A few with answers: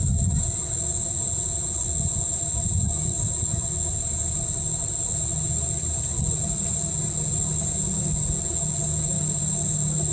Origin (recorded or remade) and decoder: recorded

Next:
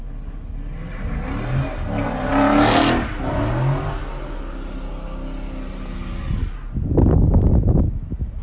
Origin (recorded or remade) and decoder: recorded